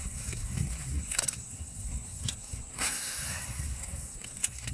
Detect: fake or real fake